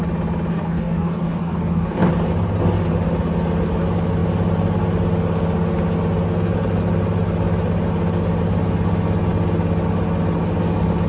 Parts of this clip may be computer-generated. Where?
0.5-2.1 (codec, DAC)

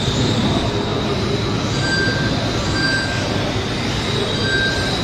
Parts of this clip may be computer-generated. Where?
none

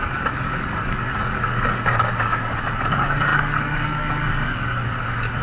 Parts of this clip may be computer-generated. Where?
0.0-5.4 (codec, DAC)

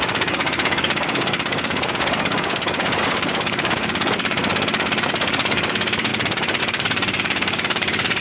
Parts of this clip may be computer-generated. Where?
0.0-4.4 (codec, DAC); 5.0-6.1; 6.6-8.2